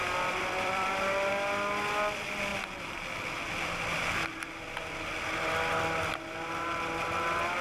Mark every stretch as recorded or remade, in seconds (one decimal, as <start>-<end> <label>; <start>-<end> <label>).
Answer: 0.0-1.3 remade; 1.3-7.6 recorded